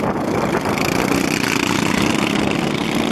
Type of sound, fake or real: real